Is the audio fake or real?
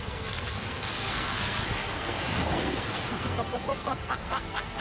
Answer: fake